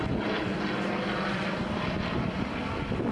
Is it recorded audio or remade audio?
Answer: recorded